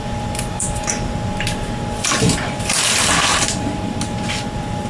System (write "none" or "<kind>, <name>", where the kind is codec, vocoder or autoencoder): vocoder, BigVGAN v2